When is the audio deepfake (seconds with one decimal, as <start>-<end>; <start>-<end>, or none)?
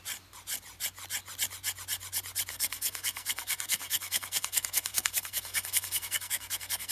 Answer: 2.5-6.9